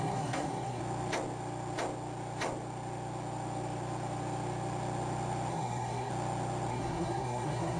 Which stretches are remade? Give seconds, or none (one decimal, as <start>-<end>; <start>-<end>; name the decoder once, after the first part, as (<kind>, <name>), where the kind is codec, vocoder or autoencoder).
0.0-0.8 (codec, SNAC); 5.5-6.1; 6.7-7.8